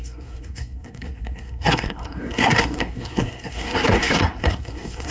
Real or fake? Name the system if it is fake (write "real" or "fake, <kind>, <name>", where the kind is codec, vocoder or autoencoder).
fake, codec, SNAC